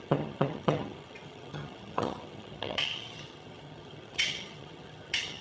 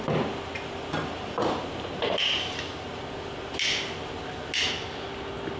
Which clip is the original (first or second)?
second